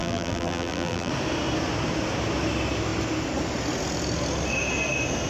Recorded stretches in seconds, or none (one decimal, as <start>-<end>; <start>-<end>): 1.1-5.3